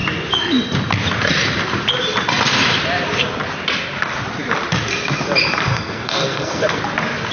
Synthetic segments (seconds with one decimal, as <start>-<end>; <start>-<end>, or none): 5.7-6.8